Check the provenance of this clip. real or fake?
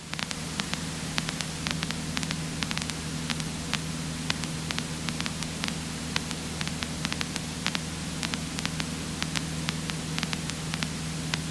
real